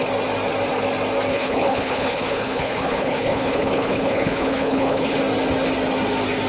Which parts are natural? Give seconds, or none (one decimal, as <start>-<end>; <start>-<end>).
0.0-1.3; 5.2-6.5